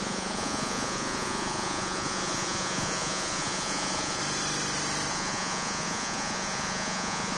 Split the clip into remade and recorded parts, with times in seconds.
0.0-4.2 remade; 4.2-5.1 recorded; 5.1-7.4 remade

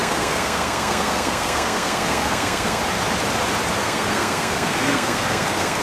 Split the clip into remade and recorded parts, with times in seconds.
0.0-2.8 remade; 2.8-3.8 recorded; 3.8-5.8 remade

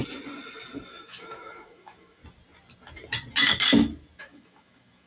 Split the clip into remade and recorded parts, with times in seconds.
0.0-0.9 recorded; 0.9-2.2 remade; 2.2-4.2 recorded; 4.2-5.1 remade